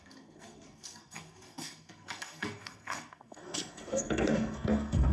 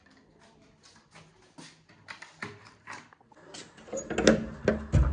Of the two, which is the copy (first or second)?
first